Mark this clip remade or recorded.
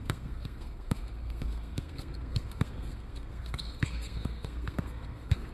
remade